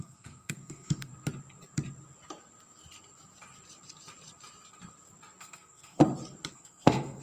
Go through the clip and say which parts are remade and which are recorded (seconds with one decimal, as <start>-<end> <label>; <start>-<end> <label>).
0.0-1.1 remade; 1.1-5.4 recorded; 5.4-6.0 remade; 6.0-6.5 recorded; 6.5-7.2 remade